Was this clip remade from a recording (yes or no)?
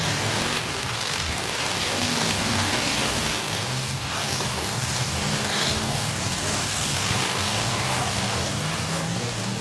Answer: yes